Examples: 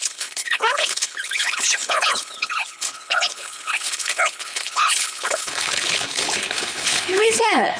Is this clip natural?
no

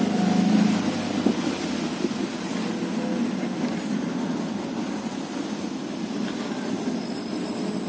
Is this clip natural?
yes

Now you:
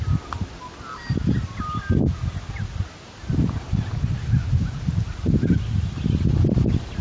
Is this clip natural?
yes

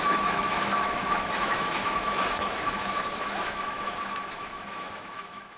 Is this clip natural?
no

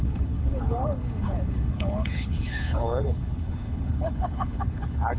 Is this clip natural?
no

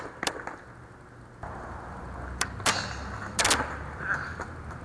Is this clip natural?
yes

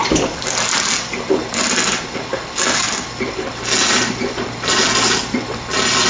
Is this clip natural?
yes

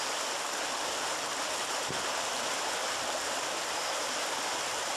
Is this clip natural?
yes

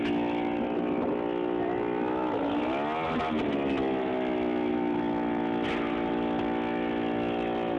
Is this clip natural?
yes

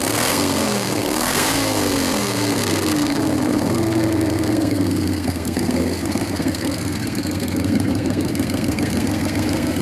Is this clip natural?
no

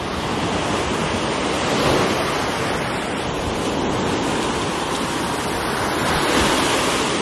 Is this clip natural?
yes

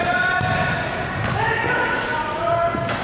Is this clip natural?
yes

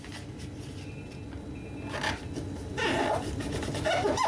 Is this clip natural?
yes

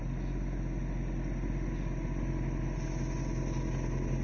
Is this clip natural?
yes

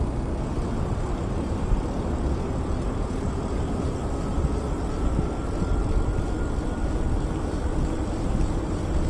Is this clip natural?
yes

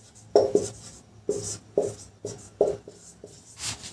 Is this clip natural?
yes